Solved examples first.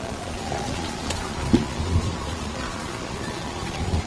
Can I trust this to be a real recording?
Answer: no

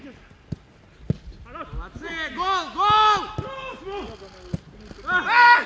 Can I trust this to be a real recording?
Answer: yes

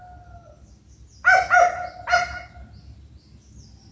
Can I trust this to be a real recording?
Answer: yes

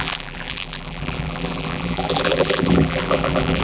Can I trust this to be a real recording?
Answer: no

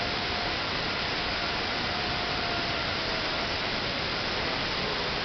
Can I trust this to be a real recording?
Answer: yes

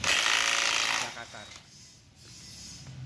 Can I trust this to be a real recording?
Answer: yes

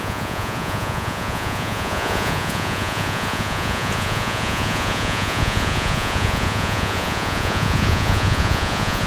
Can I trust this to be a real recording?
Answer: no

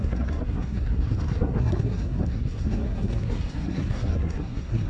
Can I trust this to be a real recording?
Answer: no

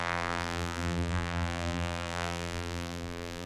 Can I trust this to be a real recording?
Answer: no